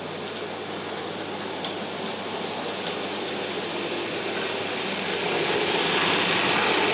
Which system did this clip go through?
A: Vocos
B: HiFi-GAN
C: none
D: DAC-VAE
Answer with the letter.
C